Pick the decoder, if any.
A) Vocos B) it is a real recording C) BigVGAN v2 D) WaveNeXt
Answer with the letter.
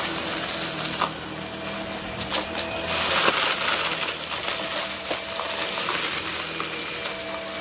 B